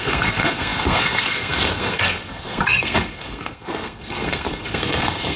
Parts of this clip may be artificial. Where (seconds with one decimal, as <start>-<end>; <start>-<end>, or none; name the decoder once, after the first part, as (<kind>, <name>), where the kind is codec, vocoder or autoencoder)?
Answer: 0.0-5.4 (codec, SNAC)